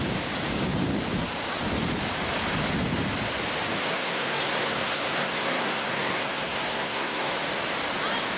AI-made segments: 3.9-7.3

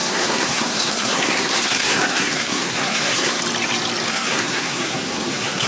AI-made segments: 0.0-3.4; 4.1-5.7